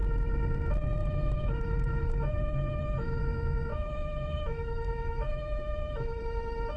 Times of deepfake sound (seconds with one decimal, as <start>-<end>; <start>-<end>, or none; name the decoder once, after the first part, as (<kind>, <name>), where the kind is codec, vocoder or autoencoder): 1.0-3.2 (autoencoder, DAC-VAE); 3.7-6.2